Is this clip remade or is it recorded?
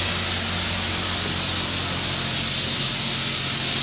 recorded